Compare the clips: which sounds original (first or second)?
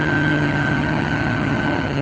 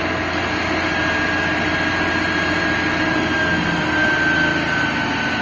second